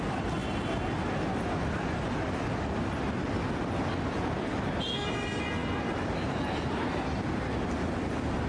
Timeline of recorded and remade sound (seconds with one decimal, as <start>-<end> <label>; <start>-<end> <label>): 0.0-8.5 recorded